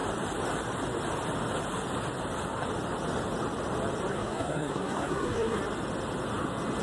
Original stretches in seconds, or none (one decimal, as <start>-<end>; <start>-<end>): 0.0-4.1; 5.6-6.8